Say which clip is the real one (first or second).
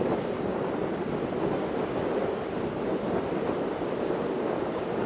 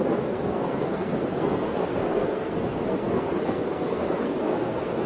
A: first